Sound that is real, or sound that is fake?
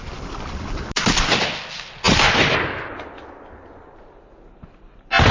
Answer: real